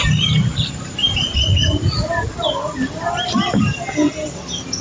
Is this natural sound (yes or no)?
yes